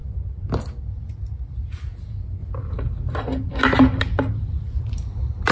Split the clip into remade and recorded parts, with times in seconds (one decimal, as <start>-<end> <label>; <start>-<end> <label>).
0.0-5.5 recorded